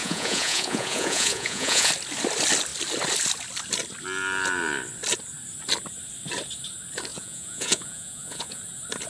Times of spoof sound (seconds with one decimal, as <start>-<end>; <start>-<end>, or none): 0.0-1.9; 7.1-8.6